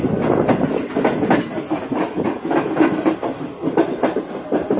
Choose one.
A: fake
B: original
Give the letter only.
B